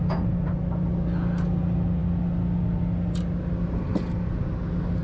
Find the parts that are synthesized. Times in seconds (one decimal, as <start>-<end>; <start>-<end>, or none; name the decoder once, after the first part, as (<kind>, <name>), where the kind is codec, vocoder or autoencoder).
none